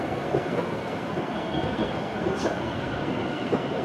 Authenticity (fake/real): fake